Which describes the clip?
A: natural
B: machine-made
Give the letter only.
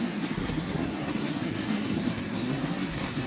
B